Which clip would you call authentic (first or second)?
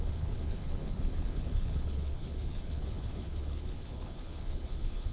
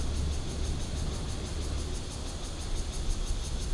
second